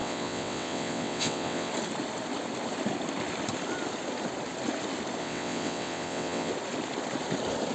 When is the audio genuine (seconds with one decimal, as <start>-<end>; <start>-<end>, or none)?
1.7-5.2; 6.5-7.7